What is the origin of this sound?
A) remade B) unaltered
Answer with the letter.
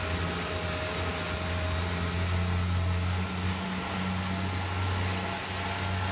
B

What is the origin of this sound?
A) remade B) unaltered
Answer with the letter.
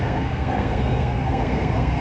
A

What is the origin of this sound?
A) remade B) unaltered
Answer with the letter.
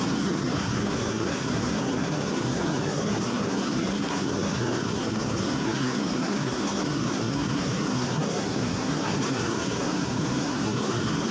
A